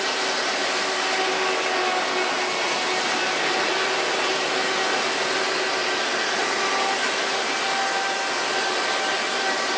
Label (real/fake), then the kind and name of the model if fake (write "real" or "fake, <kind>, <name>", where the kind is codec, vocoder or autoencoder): real